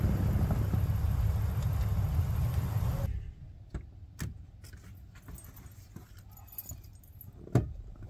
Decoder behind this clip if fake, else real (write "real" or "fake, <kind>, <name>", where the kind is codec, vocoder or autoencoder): real